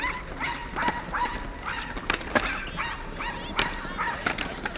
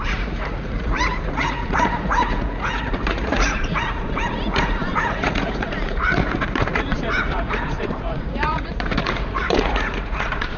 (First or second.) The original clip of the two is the first